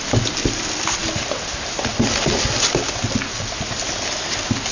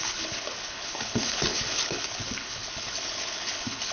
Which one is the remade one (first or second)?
second